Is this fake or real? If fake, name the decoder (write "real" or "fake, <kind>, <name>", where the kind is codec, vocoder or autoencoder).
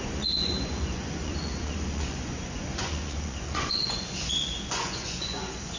fake, vocoder, Vocos